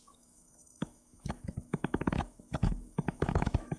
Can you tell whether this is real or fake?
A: fake